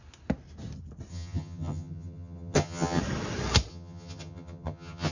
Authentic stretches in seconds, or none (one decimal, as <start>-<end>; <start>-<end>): 0.0-1.1; 3.0-3.7